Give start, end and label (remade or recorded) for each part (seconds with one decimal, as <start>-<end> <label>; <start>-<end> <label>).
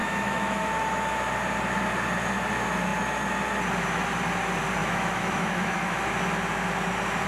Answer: 0.0-1.3 remade; 1.3-4.8 recorded; 4.8-6.0 remade; 6.0-7.3 recorded